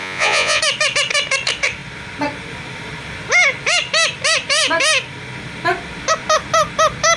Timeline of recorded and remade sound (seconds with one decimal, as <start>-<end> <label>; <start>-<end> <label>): 0.0-0.6 remade; 0.6-7.2 recorded